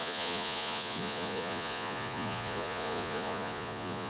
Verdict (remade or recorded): remade